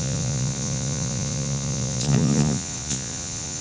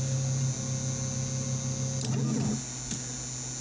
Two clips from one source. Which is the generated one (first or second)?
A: first